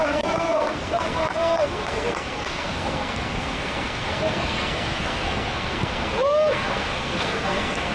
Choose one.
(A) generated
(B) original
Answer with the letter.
A